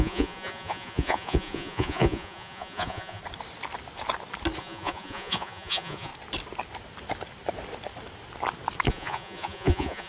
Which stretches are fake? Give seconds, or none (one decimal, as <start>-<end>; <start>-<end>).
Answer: 0.0-3.2; 4.6-6.1; 8.9-10.1